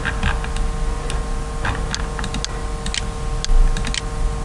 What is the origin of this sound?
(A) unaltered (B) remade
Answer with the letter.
A